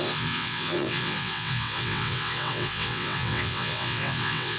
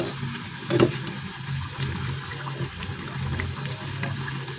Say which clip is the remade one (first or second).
first